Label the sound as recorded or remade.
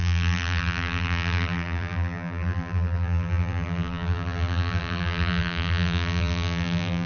remade